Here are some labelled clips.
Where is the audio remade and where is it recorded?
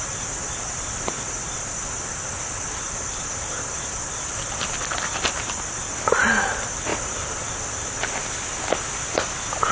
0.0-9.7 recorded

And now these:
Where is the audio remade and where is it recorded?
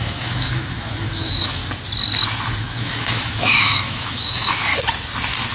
0.0-1.6 remade; 1.6-2.6 recorded; 2.6-4.7 remade; 4.7-5.5 recorded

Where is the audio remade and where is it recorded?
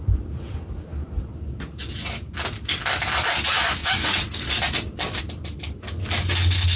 0.0-6.8 recorded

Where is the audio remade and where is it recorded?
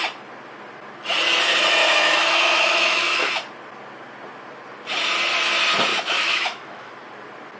0.0-1.8 recorded; 1.8-3.3 remade; 3.3-5.9 recorded; 5.9-6.9 remade; 6.9-7.6 recorded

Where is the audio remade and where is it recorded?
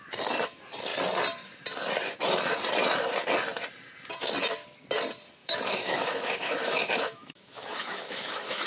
0.0-5.4 recorded; 5.4-8.7 remade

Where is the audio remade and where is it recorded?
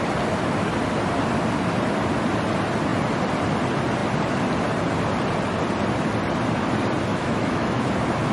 0.0-7.1 recorded; 7.1-7.8 remade; 7.8-8.3 recorded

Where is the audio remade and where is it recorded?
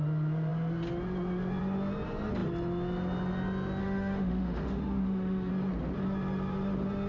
0.0-3.8 recorded; 3.8-5.5 remade; 5.5-7.1 recorded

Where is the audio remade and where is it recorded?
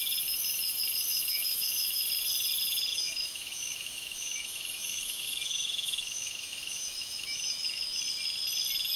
0.0-1.1 recorded; 1.1-2.0 remade; 2.0-2.9 recorded; 2.9-8.0 remade; 8.0-9.0 recorded